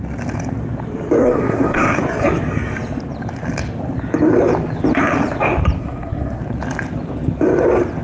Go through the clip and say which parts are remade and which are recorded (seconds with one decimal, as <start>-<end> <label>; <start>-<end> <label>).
0.0-1.2 recorded; 1.2-2.0 remade; 2.0-5.8 recorded; 5.8-6.4 remade; 6.4-8.0 recorded